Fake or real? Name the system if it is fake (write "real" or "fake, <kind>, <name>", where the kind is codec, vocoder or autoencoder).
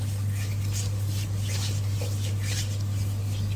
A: real